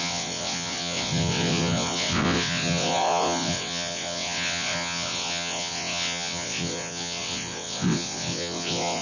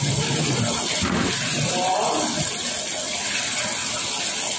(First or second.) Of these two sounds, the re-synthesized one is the first